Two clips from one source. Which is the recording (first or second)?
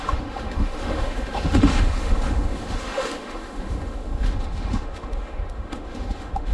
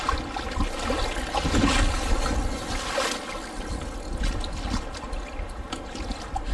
second